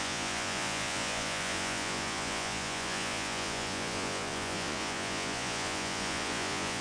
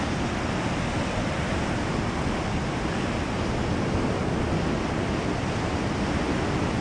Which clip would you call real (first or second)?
second